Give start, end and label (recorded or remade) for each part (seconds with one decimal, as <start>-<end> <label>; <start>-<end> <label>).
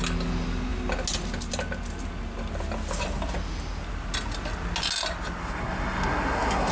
0.0-5.4 recorded; 5.4-6.7 remade